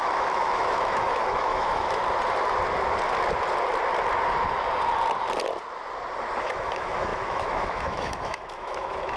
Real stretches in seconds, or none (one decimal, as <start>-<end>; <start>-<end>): 2.0-6.4